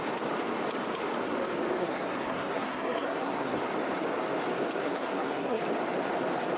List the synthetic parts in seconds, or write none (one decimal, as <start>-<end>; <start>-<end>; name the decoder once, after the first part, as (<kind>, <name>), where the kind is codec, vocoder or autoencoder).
1.8-3.6 (codec, SNAC); 4.8-5.6